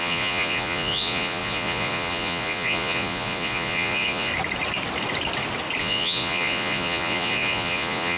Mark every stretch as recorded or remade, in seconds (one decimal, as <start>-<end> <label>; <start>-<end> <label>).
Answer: 0.0-4.3 remade; 4.3-5.8 recorded; 5.8-8.2 remade